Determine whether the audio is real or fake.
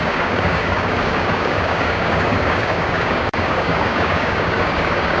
fake